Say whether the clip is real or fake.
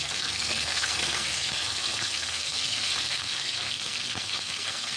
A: fake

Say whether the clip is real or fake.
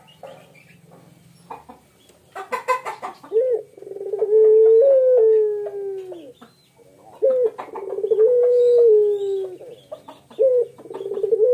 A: real